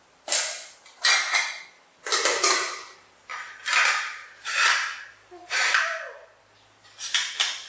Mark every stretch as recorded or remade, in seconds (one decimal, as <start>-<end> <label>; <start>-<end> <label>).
0.0-7.7 recorded